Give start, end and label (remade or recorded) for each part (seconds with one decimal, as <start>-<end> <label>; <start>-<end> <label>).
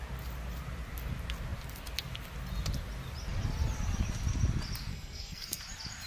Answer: 0.0-4.9 recorded; 4.9-5.6 remade; 5.6-6.1 recorded